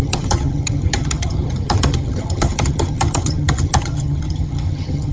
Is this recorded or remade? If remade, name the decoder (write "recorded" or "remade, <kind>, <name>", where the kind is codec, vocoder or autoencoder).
remade, vocoder, HiFi-GAN